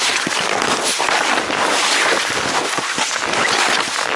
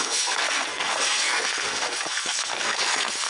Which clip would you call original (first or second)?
first